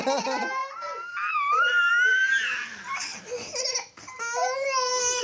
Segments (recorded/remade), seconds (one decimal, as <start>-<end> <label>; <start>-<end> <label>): 0.0-0.6 recorded; 0.6-1.9 remade; 1.9-5.2 recorded